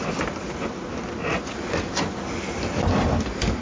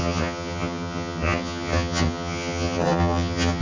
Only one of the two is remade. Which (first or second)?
second